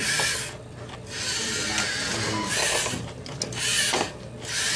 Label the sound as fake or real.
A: real